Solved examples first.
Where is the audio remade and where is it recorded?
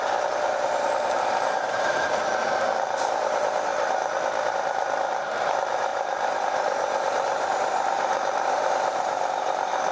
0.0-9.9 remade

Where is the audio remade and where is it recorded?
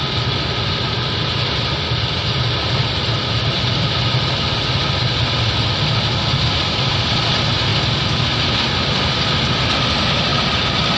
0.0-4.8 remade; 4.8-6.7 recorded; 6.7-7.7 remade; 7.7-9.0 recorded; 9.0-10.3 remade; 10.3-11.0 recorded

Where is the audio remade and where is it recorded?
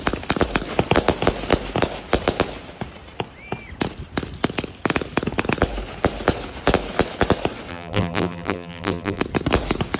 0.0-7.7 recorded; 7.7-9.2 remade; 9.2-10.0 recorded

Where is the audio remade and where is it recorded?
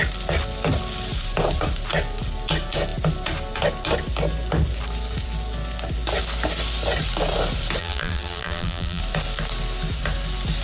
0.0-7.8 recorded; 7.8-9.0 remade; 9.0-10.6 recorded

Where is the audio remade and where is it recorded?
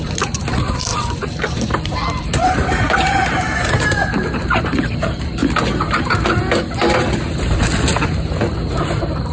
0.0-5.4 remade; 5.4-5.9 recorded; 5.9-6.4 remade; 6.4-8.8 recorded; 8.8-9.3 remade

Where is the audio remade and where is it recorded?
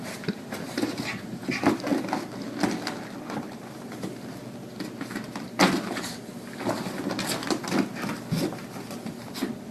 0.0-9.7 recorded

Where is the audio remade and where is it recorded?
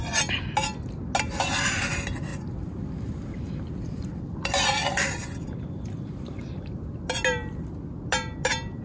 0.0-2.3 recorded; 2.3-6.4 remade; 6.4-8.8 recorded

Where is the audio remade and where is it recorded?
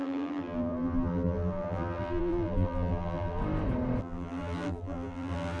0.0-3.4 remade; 3.4-4.0 recorded; 4.0-5.6 remade